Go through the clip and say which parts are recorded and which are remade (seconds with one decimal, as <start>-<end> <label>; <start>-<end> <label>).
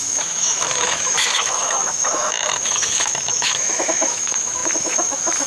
0.0-5.5 remade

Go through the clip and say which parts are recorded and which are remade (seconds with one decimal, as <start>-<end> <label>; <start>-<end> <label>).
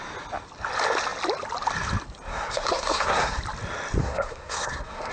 0.0-2.3 recorded; 2.3-3.4 remade; 3.4-4.0 recorded; 4.0-5.1 remade